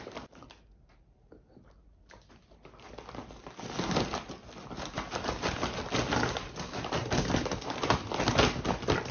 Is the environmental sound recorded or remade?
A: recorded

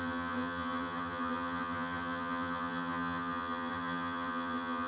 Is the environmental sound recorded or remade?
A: remade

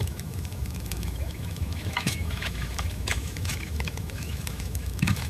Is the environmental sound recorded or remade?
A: remade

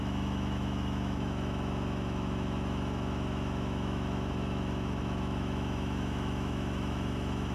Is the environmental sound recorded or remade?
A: remade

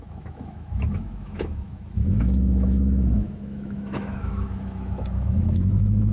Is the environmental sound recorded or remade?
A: remade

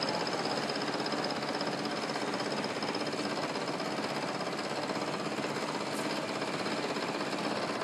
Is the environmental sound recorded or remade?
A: recorded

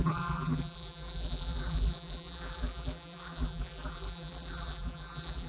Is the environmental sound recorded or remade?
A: remade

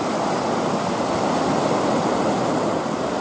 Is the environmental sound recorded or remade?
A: recorded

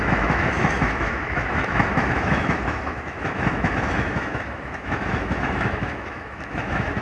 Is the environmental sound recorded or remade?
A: remade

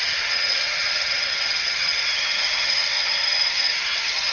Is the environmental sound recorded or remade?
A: remade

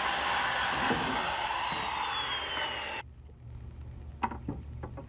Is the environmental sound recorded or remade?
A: recorded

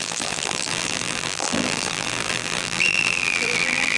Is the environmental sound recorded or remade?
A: remade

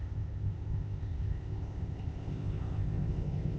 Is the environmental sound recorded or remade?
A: remade